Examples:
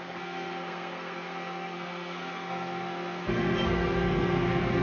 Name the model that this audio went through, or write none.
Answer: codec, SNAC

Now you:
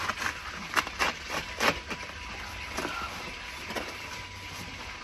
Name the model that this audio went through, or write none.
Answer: none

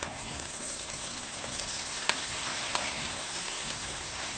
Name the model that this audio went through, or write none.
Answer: codec, SNAC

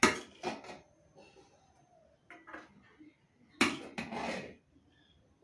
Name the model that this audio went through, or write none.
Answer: none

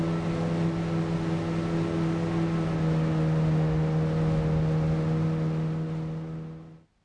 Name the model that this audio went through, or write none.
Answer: none